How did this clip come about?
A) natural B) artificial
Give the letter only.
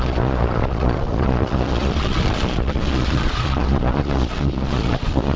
B